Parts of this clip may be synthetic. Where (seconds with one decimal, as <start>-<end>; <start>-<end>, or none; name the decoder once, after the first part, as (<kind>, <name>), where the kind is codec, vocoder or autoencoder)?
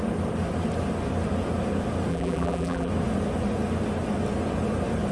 2.1-2.9 (vocoder, BigVGAN v2)